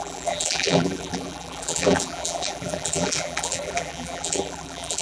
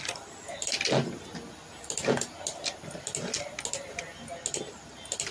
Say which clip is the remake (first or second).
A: first